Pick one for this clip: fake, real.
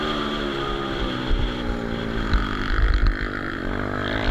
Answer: real